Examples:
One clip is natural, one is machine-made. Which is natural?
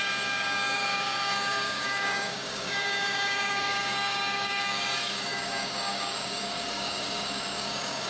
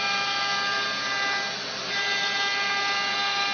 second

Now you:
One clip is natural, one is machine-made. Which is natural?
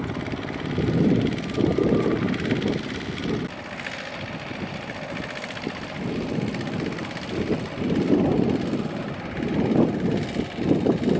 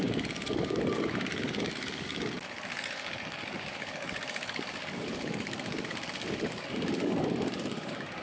first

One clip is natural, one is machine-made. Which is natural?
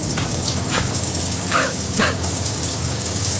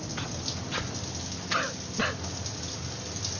second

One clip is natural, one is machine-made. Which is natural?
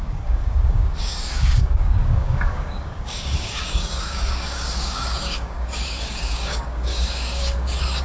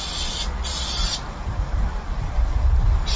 second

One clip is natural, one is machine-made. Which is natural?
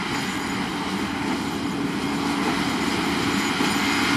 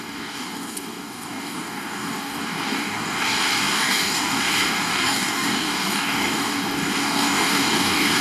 first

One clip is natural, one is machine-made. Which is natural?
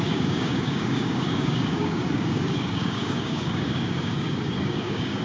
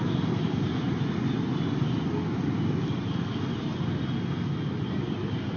second